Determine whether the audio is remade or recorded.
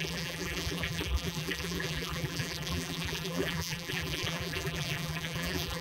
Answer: remade